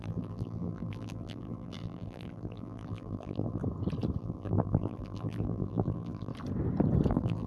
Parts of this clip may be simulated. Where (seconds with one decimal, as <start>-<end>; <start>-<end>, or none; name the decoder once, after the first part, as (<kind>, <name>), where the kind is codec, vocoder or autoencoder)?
0.0-3.6 (vocoder, BigVGAN v2); 4.2-6.3; 7.1-7.5